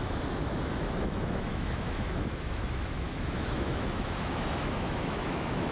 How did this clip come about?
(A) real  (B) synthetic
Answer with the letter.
B